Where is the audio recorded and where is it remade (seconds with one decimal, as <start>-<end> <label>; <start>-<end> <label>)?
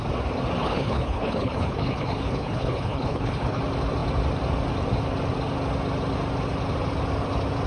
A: 0.0-0.6 recorded; 0.6-3.6 remade; 3.6-7.7 recorded